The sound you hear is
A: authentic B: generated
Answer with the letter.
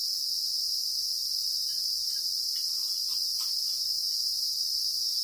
A